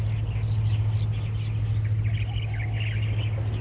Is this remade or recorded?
recorded